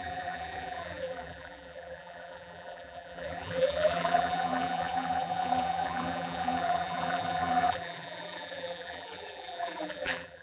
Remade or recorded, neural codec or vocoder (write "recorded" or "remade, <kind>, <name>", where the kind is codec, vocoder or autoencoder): remade, vocoder, BigVGAN v2